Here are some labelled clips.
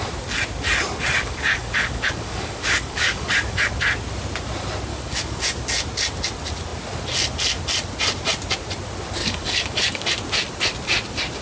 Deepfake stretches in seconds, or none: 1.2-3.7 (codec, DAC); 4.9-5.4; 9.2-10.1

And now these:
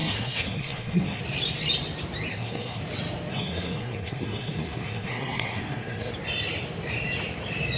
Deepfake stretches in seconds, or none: 0.0-1.2 (codec, SNAC); 2.3-2.8; 3.3-6.1

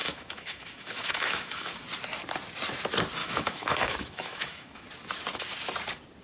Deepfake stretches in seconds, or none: 0.0-1.8 (autoencoder, DAC-VAE); 3.2-4.9

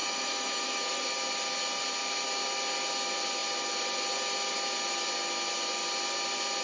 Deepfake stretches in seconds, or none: 0.0-1.0 (autoencoder, DAC-VAE)

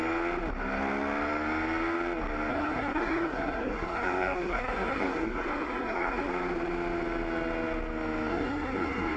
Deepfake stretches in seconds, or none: 2.5-6.3 (codec, SNAC); 8.3-9.2